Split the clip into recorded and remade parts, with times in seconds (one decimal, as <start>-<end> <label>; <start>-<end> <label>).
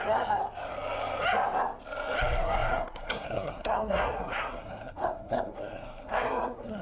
0.0-0.4 remade; 0.4-2.2 recorded; 2.2-6.8 remade